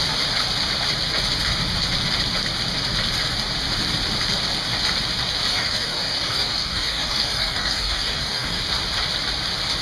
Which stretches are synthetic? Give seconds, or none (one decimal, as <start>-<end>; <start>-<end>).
5.5-8.6